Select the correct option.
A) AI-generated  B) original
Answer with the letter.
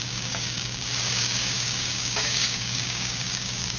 A